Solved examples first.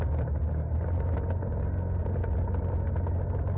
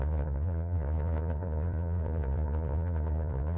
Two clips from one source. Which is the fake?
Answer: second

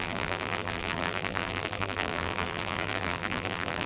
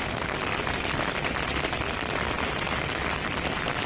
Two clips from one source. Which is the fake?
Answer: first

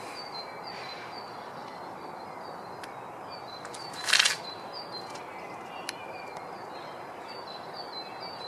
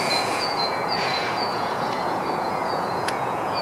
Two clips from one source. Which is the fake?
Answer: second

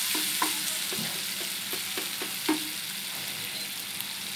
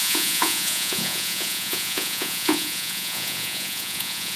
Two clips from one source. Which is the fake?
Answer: second